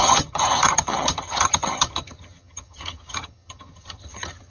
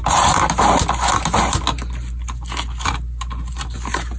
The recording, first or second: second